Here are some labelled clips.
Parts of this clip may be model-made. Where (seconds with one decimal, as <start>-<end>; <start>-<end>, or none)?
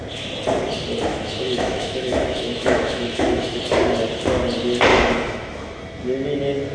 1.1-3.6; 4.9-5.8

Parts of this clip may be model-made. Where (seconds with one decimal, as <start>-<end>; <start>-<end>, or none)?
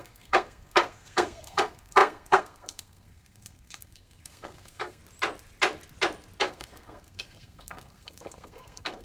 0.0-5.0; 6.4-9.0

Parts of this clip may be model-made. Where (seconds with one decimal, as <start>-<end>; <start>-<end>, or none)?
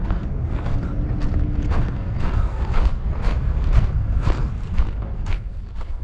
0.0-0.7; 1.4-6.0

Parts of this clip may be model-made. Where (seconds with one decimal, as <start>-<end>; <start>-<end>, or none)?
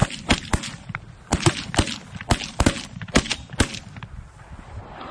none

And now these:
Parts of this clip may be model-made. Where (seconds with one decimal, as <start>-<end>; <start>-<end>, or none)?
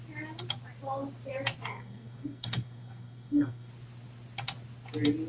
1.7-3.7